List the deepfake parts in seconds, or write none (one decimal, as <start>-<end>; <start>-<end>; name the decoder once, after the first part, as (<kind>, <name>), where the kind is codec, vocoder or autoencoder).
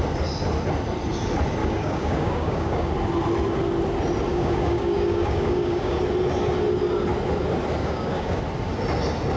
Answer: 1.6-2.9 (codec, DAC); 4.3-6.0; 7.8-8.4